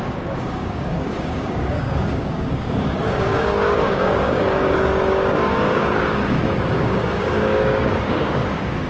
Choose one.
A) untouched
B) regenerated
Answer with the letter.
B